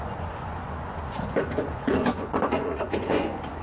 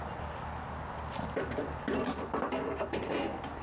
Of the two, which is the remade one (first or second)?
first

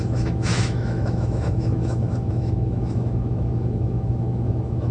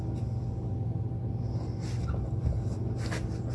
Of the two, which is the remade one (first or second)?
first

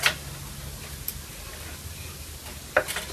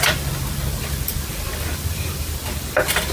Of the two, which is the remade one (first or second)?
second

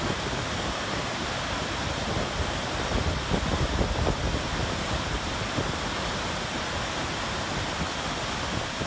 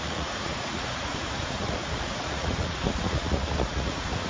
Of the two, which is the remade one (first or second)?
second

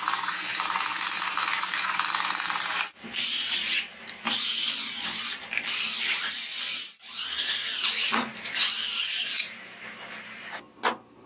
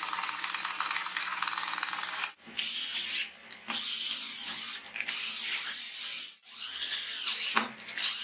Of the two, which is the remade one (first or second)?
first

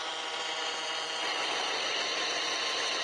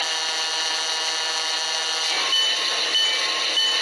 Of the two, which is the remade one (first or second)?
first